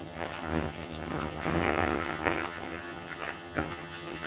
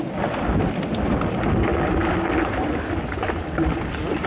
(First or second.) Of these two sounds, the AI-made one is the first